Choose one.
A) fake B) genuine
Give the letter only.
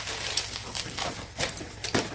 B